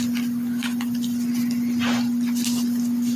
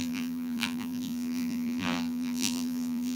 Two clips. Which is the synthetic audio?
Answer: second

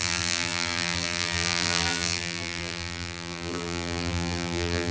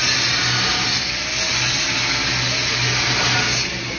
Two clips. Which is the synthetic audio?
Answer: first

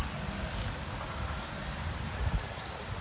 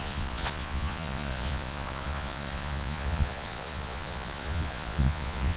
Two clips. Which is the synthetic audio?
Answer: second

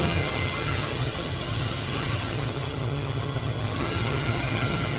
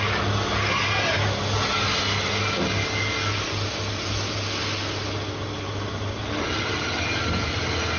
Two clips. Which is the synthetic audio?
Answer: first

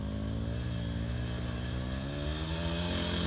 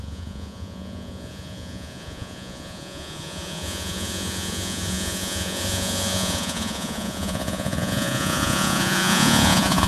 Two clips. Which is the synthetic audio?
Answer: second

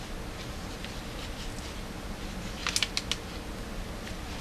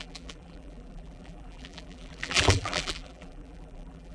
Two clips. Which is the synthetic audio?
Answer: second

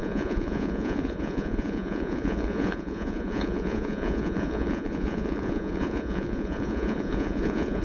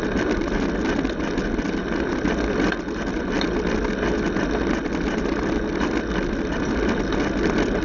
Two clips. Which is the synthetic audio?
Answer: first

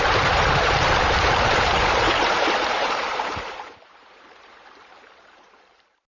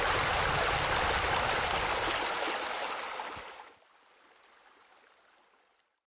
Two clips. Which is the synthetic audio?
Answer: first